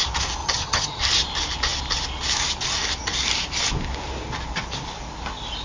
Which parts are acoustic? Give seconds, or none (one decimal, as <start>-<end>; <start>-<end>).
0.0-0.4; 1.0-5.6